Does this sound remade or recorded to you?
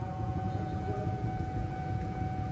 remade